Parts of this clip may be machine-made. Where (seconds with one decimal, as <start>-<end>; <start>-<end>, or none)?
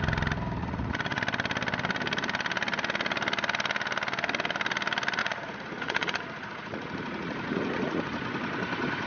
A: 0.6-1.2; 5.2-8.0